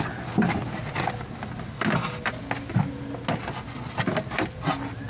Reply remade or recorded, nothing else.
recorded